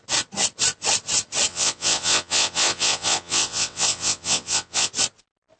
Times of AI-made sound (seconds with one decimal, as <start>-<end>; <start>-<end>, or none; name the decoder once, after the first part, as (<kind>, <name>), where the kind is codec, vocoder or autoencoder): 1.5-4.9 (vocoder, WaveNeXt)